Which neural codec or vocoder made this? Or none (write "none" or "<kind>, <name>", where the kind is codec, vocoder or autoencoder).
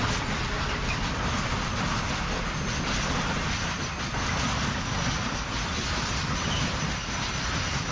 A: none